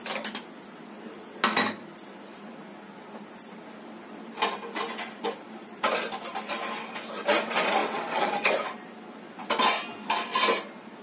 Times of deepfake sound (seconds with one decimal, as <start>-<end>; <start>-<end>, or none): 7.8-8.5